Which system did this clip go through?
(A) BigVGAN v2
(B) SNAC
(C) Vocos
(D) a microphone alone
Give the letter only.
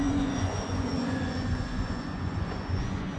C